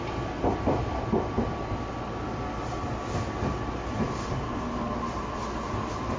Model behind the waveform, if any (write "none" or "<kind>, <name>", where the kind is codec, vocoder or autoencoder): none